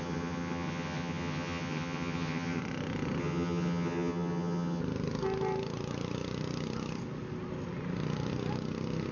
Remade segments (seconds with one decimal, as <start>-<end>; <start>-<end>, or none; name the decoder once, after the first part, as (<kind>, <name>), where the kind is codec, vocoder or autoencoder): 0.0-2.6 (vocoder, HiFi-GAN); 3.2-4.8